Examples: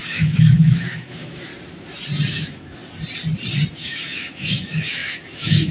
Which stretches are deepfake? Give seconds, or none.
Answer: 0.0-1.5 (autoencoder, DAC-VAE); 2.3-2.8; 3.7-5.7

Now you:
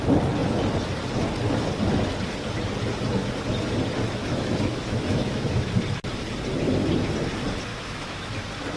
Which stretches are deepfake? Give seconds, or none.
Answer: 4.2-5.7 (autoencoder, DAC-VAE); 7.7-8.3

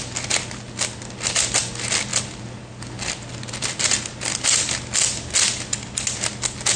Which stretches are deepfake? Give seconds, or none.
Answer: none

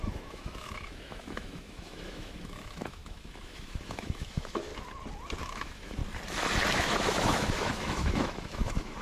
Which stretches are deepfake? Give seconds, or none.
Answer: 0.0-4.7 (autoencoder, DAC-VAE); 5.4-6.0; 6.7-9.0